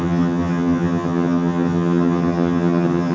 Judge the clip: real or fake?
fake